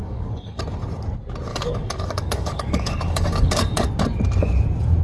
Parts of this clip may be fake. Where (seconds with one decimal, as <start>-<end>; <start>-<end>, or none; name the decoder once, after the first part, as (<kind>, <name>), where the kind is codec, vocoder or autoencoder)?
0.0-0.6 (codec, DAC); 1.5-3.9

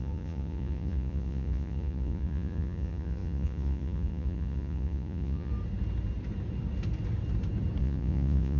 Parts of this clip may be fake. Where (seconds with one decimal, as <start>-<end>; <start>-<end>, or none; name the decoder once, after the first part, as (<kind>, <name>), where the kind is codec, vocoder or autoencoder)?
0.0-5.5 (vocoder, Vocos); 7.8-8.6

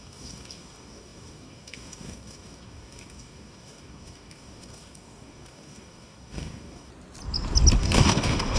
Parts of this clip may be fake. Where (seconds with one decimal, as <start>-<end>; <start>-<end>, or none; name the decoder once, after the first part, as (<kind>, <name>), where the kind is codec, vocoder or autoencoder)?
0.0-6.9 (codec, DAC); 7.8-8.6